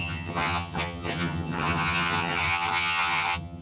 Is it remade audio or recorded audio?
remade